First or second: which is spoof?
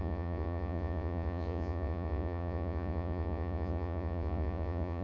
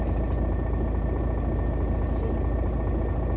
first